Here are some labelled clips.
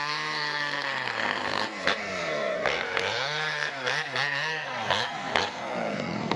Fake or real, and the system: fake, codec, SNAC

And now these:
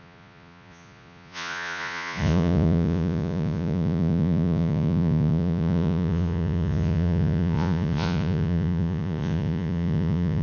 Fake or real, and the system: fake, vocoder, Vocos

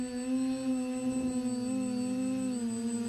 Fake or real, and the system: real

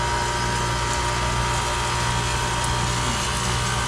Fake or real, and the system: real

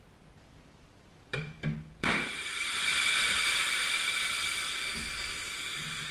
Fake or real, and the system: fake, vocoder, BigVGAN v2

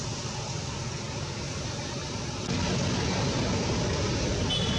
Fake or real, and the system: real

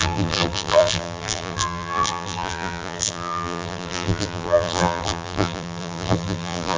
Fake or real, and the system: fake, vocoder, BigVGAN v2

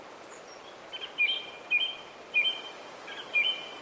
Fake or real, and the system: real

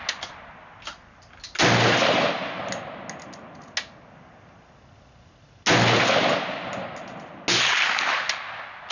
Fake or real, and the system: real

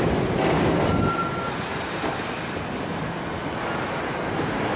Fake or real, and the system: real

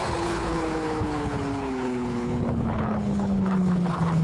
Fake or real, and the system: fake, codec, HILCodec